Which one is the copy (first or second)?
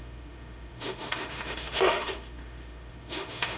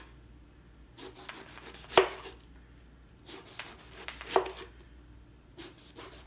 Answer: first